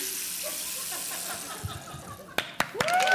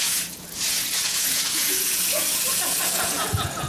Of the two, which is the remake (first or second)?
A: second